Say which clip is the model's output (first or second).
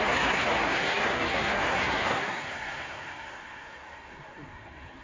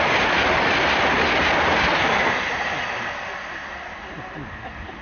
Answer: first